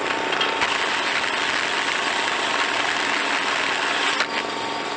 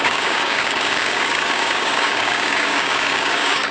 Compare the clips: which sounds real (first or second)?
first